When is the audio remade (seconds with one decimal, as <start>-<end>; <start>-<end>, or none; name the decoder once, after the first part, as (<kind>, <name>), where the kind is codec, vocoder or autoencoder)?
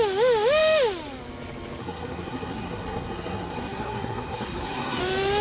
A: 1.8-5.0 (codec, SNAC)